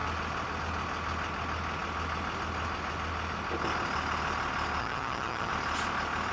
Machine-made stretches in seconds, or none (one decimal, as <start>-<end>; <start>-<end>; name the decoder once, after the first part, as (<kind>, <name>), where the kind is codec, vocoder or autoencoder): 4.8-5.5 (vocoder, HiFi-GAN)